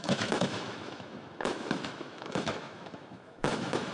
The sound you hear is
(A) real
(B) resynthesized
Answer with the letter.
B